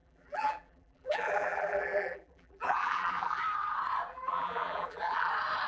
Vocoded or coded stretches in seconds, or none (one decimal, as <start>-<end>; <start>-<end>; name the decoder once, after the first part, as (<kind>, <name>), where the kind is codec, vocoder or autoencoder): 0.0-3.4 (vocoder, BigVGAN v2); 4.1-5.3